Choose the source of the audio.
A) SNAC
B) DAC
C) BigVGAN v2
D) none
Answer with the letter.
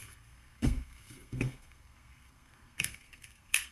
A